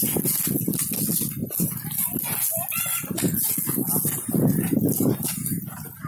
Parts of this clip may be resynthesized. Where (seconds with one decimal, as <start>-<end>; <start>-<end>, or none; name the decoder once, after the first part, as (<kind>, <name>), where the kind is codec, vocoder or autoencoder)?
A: none

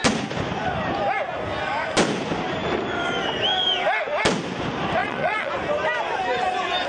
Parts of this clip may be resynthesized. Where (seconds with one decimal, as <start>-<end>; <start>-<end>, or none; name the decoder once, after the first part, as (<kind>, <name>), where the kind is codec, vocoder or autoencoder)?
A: 5.0-5.5 (vocoder, Vocos)

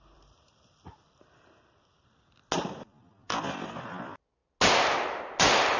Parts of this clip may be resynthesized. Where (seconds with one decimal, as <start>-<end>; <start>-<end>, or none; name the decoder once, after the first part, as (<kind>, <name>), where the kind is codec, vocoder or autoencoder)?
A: none

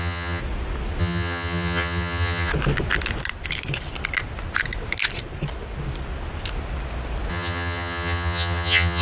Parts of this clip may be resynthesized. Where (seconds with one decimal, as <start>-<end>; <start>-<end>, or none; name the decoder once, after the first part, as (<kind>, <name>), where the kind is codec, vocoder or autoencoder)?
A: 0.0-0.4 (vocoder, HiFi-GAN); 1.0-2.5; 7.3-9.0

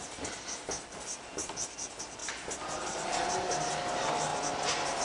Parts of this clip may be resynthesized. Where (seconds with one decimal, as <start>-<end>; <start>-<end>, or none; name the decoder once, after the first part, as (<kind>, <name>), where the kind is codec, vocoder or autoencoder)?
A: none